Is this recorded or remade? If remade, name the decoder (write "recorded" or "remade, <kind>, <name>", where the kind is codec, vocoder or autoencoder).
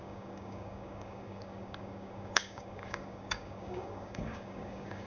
remade, codec, DAC